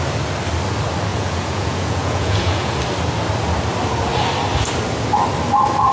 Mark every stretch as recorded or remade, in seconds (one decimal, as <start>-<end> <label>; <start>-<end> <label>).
0.0-1.1 recorded; 1.1-2.7 remade; 2.7-5.9 recorded